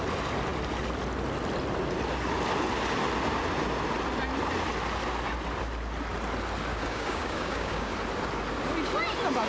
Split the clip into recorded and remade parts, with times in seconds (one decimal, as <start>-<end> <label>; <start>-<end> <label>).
0.0-6.7 recorded; 6.7-7.9 remade; 7.9-9.5 recorded